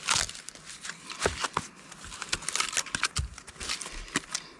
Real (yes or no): yes